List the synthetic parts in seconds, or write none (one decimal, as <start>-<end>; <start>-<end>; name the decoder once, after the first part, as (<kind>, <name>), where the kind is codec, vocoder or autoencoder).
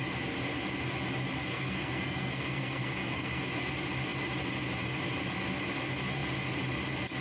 1.5-3.4 (codec, SNAC)